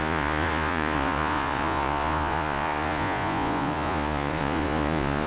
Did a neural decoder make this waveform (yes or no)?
yes